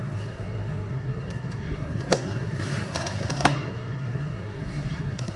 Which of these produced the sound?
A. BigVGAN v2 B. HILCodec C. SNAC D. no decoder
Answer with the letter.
C